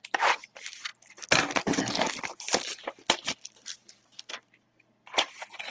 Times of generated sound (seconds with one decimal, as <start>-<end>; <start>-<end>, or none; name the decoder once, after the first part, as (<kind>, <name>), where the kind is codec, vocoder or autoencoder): none